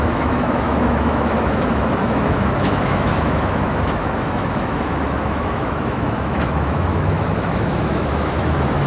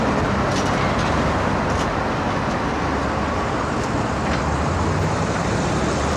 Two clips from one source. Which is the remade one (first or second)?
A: first